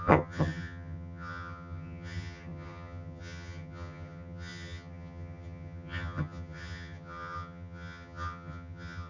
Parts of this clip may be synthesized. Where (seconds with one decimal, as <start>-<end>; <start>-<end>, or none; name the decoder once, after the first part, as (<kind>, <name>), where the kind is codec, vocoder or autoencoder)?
0.0-9.1 (vocoder, HiFi-GAN)